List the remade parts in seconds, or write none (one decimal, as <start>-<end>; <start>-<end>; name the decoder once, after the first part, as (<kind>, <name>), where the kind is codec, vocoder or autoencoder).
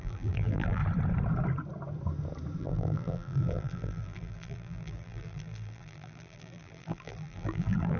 0.0-0.8 (vocoder, BigVGAN v2); 2.6-8.0